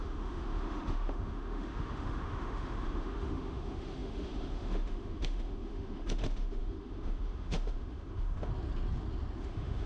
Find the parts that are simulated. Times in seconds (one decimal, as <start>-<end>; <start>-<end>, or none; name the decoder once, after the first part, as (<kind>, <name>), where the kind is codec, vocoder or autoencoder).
0.0-8.5 (autoencoder, DAC-VAE); 9.4-9.9